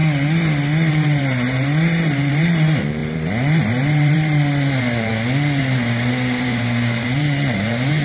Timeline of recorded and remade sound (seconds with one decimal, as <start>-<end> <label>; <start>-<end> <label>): 0.0-0.9 recorded; 0.9-5.1 remade; 5.1-5.6 recorded; 5.6-8.0 remade